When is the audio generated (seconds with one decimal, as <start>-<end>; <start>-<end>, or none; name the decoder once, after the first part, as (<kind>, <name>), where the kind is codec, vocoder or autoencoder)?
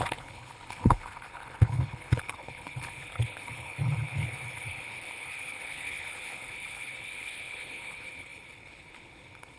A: 0.0-9.6 (codec, HILCodec)